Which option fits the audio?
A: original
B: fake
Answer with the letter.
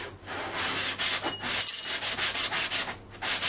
A